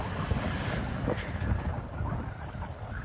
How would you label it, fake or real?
real